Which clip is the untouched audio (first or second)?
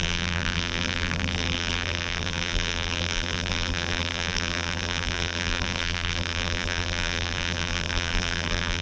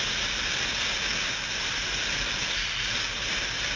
second